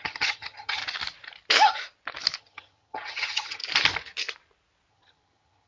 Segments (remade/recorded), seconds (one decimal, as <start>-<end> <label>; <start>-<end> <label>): 0.0-0.8 remade; 0.8-2.4 recorded; 2.4-3.6 remade; 3.6-4.9 recorded; 4.9-5.7 remade